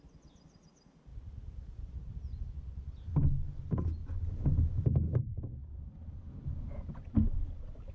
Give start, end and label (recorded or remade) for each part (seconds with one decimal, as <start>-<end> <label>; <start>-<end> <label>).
0.0-4.0 recorded; 4.0-4.8 remade; 4.8-5.6 recorded; 5.6-6.9 remade; 6.9-7.9 recorded